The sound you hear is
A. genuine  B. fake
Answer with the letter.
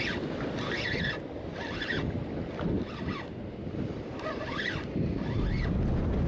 A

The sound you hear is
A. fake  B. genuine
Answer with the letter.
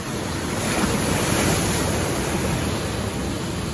B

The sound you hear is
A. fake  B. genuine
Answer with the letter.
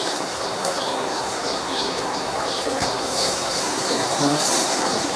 A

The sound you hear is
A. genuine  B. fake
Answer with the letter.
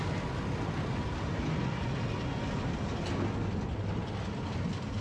A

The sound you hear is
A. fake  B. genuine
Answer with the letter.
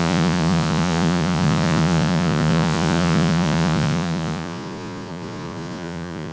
A